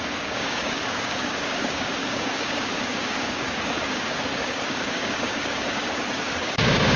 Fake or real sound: fake